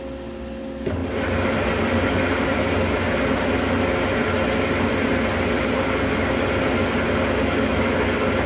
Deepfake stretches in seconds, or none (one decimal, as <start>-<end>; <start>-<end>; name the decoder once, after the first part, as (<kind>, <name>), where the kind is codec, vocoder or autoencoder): none